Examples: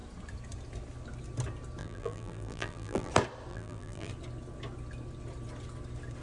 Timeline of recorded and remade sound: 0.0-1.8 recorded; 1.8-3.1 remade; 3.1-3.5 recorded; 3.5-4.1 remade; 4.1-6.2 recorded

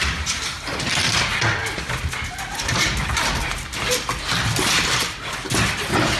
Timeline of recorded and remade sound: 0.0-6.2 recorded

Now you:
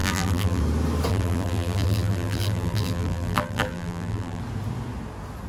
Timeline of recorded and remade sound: 0.0-0.6 remade; 0.6-1.1 recorded; 1.1-4.4 remade; 4.4-5.5 recorded